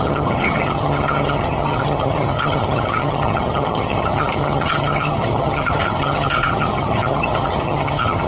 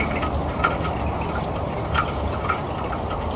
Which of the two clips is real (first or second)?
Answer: second